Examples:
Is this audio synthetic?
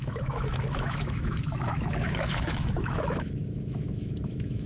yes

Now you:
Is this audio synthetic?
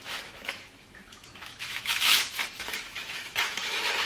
yes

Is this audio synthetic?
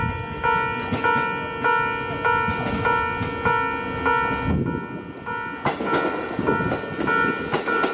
no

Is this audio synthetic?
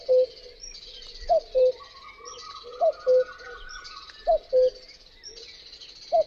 no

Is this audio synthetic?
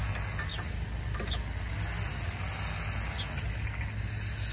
no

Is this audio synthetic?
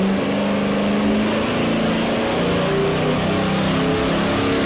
no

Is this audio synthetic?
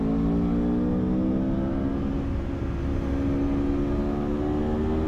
no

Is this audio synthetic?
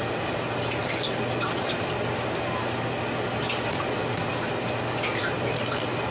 no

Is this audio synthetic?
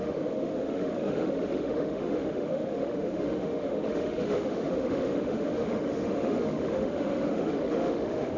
yes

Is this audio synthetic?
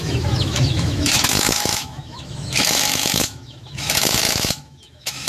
yes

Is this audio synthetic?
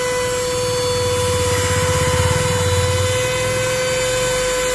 no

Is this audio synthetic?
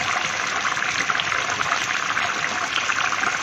no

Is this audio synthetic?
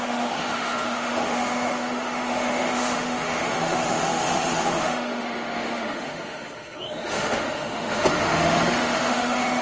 yes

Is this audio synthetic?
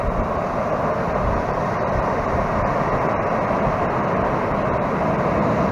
no